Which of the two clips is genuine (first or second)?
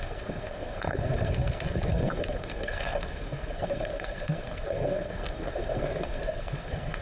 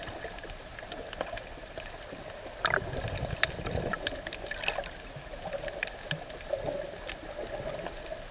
second